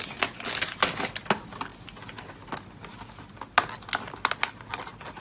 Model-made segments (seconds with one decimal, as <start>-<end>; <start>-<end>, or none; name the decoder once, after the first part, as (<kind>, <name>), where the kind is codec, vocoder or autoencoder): none